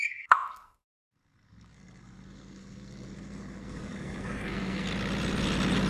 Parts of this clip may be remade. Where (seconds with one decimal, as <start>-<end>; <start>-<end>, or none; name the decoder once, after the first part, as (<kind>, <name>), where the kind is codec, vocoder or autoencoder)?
0.0-4.9 (codec, SNAC)